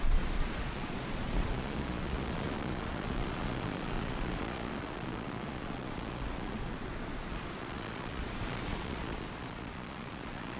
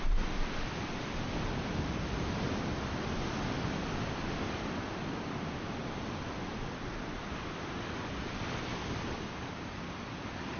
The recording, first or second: second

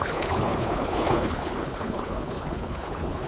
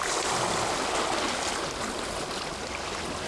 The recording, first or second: second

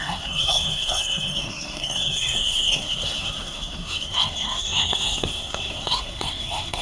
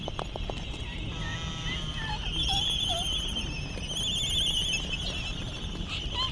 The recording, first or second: second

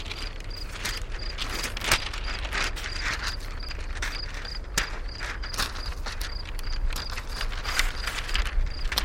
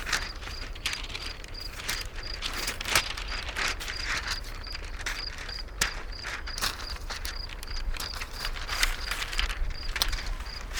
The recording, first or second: first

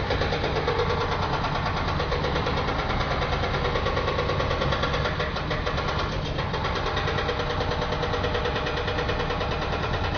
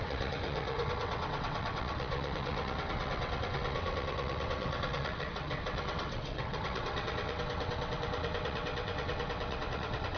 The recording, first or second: first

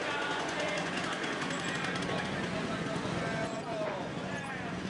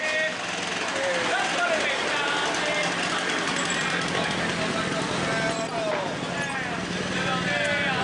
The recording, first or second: second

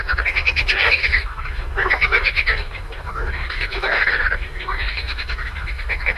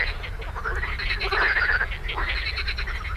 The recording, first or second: second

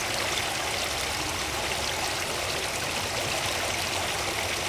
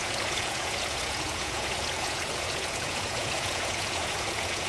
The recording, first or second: first